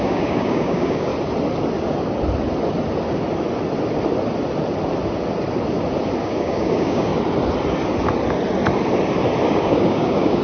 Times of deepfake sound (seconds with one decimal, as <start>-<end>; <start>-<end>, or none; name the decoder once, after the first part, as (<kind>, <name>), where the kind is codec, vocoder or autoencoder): 0.0-1.1 (codec, DAC); 6.2-7.1; 9.5-10.4